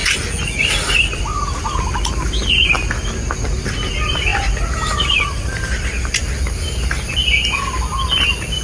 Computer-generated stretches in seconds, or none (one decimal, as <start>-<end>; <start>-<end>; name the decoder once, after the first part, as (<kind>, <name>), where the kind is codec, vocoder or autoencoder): none